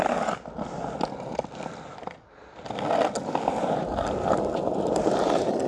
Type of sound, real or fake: real